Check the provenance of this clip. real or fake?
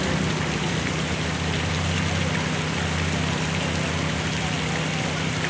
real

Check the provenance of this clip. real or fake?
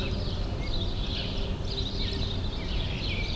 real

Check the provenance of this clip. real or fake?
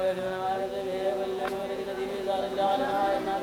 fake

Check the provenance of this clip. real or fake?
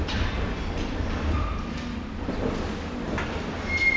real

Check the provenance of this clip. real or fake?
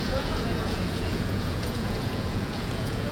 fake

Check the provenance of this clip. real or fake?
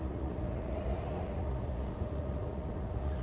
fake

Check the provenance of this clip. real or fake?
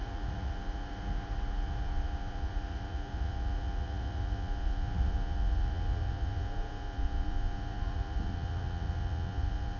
fake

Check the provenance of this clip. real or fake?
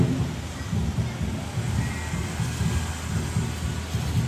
real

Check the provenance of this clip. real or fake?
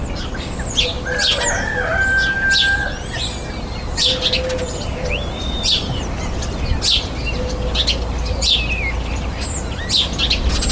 real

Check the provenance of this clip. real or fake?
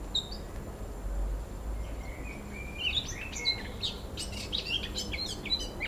real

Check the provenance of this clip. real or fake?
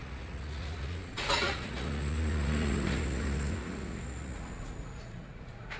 fake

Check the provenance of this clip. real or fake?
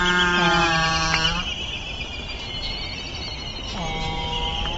real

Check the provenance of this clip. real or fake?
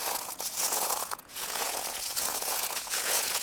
fake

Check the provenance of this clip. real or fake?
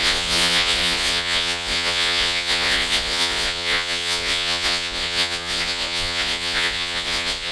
fake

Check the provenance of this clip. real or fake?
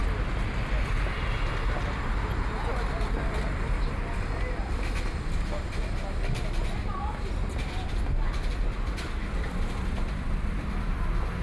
real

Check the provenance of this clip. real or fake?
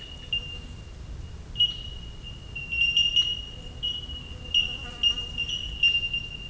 real